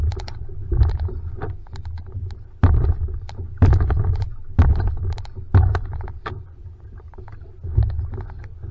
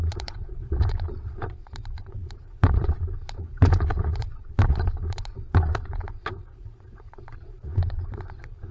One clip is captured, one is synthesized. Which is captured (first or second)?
first